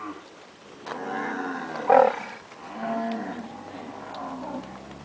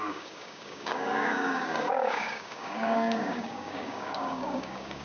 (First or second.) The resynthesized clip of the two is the second